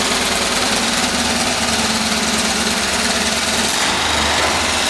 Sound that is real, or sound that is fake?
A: real